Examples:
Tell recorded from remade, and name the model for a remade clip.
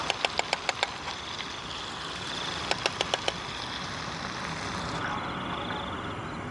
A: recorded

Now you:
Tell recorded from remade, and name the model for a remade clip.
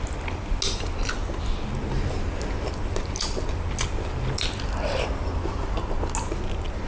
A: recorded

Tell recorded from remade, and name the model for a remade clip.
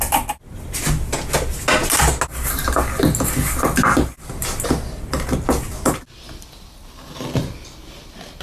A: recorded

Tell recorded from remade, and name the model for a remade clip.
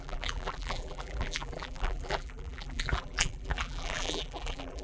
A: remade, vocoder, BigVGAN v2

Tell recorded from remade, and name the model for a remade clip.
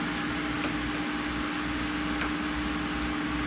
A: recorded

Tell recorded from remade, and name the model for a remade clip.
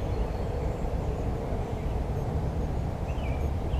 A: remade, vocoder, BigVGAN v2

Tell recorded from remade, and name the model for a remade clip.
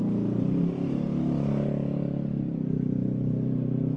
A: remade, vocoder, BigVGAN v2